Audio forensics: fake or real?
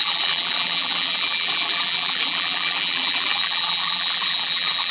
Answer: fake